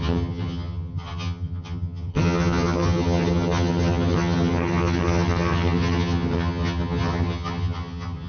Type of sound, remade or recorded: remade